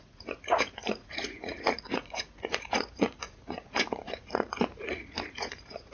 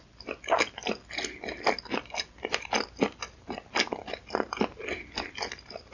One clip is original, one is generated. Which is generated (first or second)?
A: first